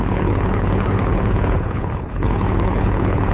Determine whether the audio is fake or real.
fake